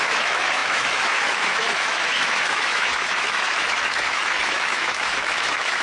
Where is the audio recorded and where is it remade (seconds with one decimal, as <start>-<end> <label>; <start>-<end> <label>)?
0.0-5.8 remade